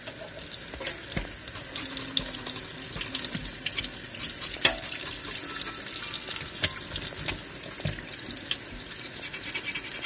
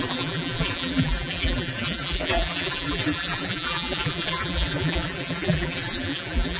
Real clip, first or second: first